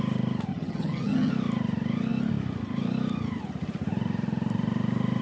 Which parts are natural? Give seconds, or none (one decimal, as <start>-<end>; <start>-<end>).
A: 0.0-0.5; 1.3-5.2